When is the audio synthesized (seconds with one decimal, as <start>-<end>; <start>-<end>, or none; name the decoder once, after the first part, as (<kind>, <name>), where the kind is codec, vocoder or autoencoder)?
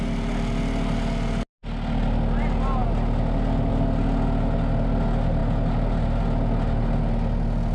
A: none